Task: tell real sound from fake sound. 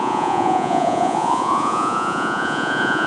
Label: fake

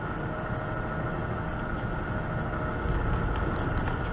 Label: real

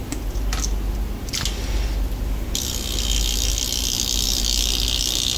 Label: real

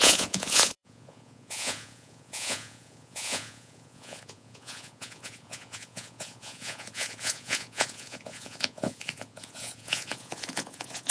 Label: fake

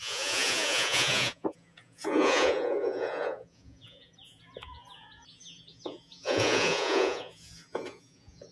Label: fake